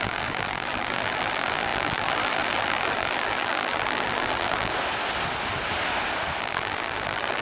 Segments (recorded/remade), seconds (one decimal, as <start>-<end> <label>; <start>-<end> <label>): 0.0-4.7 remade; 4.7-6.4 recorded; 6.4-7.4 remade